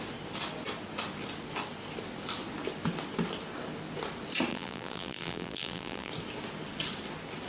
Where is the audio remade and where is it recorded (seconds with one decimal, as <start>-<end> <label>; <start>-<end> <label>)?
0.0-4.5 recorded; 4.5-6.1 remade; 6.1-7.5 recorded